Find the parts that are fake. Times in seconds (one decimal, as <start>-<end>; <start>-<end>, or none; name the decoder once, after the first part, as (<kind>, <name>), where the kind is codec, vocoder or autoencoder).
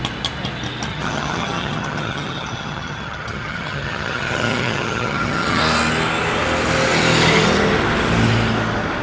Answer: 0.9-5.6 (vocoder, HiFi-GAN)